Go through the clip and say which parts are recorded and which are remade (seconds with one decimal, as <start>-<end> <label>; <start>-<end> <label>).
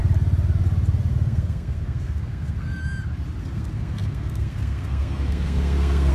0.0-1.1 recorded; 1.1-2.8 remade; 2.8-3.4 recorded; 3.4-6.1 remade